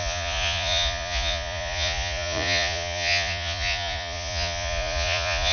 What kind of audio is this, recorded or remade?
remade